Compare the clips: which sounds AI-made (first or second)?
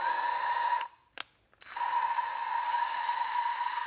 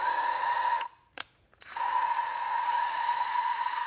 second